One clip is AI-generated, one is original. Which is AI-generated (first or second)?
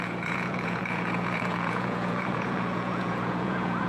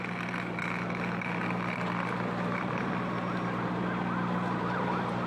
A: first